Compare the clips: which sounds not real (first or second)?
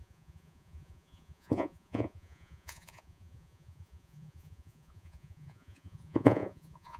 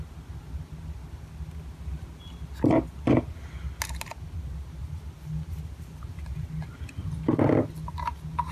first